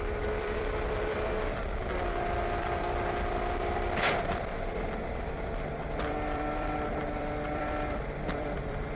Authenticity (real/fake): fake